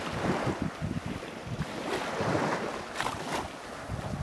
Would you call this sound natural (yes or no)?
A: yes